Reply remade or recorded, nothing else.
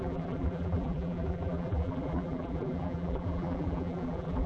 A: remade